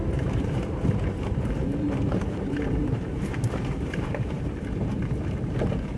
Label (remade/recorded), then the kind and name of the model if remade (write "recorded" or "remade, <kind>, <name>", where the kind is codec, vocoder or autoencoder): remade, vocoder, BigVGAN v2